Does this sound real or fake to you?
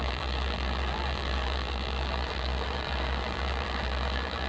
fake